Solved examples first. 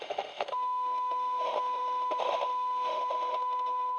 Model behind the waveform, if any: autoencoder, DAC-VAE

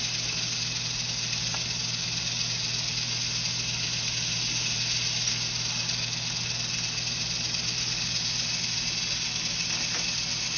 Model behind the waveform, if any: none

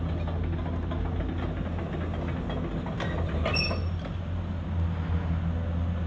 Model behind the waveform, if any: none